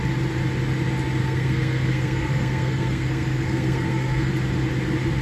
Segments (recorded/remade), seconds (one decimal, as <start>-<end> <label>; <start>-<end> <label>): 0.0-1.2 recorded; 1.2-4.3 remade; 4.3-5.2 recorded